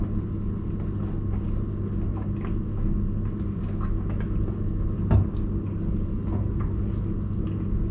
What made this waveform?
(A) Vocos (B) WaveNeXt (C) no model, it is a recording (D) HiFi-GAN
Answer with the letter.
C